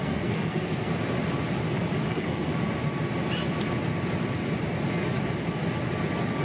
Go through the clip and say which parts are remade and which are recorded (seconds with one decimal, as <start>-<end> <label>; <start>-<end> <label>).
0.0-0.9 remade; 0.9-2.1 recorded; 2.1-2.5 remade; 2.5-6.4 recorded